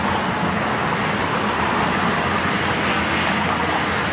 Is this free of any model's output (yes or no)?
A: yes